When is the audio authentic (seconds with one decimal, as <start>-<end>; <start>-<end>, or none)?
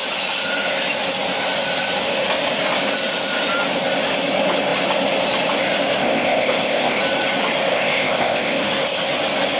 0.0-6.0; 7.0-7.7; 8.6-9.6